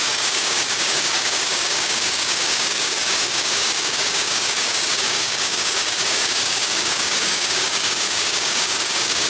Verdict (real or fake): fake